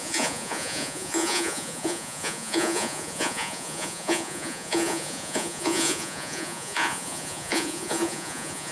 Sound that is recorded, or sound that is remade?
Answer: remade